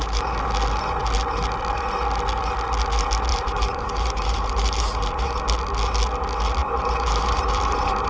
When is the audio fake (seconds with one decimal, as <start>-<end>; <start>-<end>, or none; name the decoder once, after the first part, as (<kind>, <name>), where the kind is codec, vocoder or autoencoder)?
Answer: 3.3-5.4 (vocoder, BigVGAN v2); 6.6-8.1